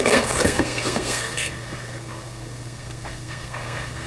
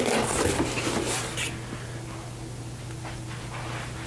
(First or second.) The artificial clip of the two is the first